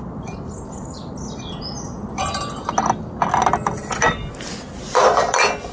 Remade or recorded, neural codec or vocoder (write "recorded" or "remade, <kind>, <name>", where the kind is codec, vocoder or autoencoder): recorded